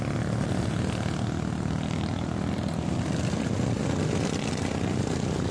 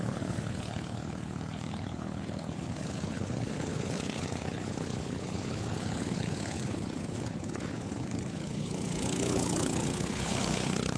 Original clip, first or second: first